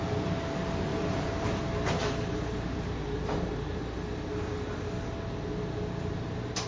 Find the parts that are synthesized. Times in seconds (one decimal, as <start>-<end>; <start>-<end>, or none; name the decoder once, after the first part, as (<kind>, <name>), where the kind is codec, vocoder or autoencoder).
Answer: 0.9-1.6 (vocoder, BigVGAN v2); 2.0-3.8